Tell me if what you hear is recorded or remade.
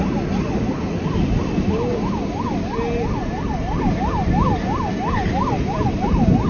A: recorded